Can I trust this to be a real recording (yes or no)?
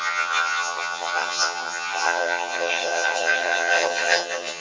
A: no